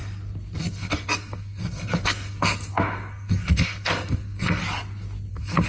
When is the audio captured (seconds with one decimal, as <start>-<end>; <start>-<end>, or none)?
0.0-0.6; 4.6-5.3